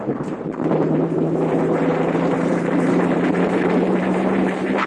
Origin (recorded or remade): remade